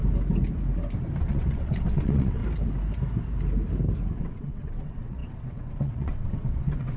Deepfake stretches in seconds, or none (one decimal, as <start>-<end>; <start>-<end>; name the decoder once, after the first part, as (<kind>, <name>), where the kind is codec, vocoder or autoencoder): 1.2-2.4 (vocoder, WaveNeXt); 4.2-7.0